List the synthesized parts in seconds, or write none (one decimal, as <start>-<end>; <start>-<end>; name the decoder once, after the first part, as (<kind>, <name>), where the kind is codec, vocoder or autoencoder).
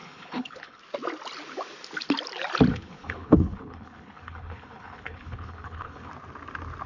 0.0-0.8 (codec, HILCodec); 2.7-6.1